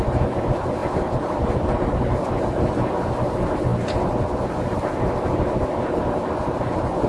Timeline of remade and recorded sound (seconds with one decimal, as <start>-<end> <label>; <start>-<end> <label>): 0.0-0.8 recorded; 0.8-2.7 remade; 2.7-7.1 recorded